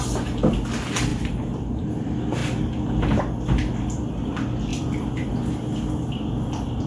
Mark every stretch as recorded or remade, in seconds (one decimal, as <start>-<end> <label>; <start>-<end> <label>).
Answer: 0.0-1.1 recorded; 1.1-1.8 remade; 1.8-4.7 recorded; 4.7-5.3 remade; 5.3-6.9 recorded